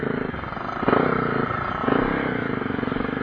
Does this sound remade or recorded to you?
recorded